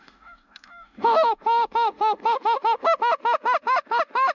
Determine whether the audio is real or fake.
fake